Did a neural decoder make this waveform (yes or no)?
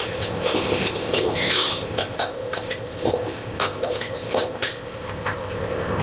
yes